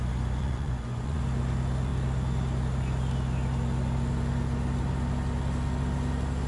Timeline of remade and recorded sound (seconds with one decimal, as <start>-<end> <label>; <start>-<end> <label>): 0.0-0.4 recorded; 0.4-1.2 remade; 1.2-6.5 recorded